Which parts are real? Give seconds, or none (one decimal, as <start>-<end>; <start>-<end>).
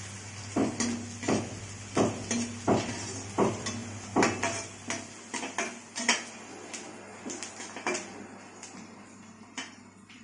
0.0-10.2